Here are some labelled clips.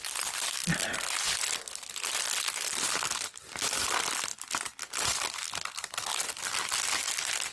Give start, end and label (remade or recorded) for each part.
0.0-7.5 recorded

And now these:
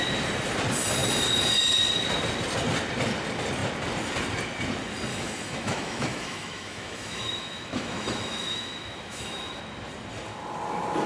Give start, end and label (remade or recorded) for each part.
0.0-5.1 recorded; 5.1-9.6 remade; 9.6-11.1 recorded